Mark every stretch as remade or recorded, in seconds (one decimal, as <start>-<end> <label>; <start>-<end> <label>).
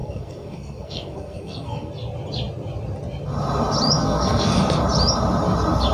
0.0-1.9 remade; 1.9-4.0 recorded; 4.0-4.6 remade; 4.6-5.9 recorded